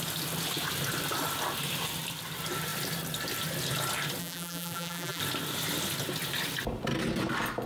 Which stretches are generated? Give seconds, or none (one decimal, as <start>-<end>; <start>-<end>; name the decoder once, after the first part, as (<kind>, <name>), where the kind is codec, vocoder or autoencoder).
4.2-5.2 (vocoder, BigVGAN v2)

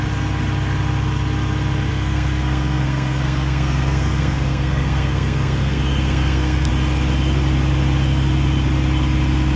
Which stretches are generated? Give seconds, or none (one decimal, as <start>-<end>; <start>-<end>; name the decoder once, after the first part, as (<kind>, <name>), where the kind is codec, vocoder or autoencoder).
1.9-6.7 (codec, SNAC)